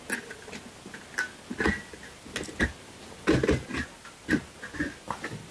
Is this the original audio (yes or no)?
yes